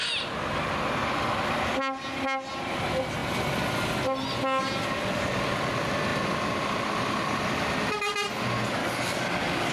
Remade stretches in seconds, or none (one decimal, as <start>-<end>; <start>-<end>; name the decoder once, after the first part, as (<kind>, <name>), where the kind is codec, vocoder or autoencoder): 8.8-9.7 (codec, DAC)